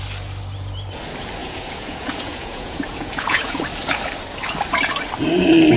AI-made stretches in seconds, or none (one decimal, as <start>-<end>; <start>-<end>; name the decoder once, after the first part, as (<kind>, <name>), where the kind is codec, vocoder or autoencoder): 1.4-3.6 (vocoder, Vocos)